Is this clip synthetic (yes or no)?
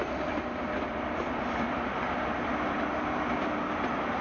no